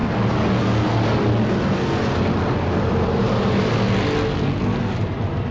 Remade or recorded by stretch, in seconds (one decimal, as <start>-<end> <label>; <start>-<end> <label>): 0.0-5.5 recorded